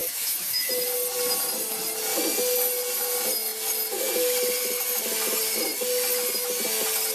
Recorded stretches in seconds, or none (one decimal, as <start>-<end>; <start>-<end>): 0.7-7.1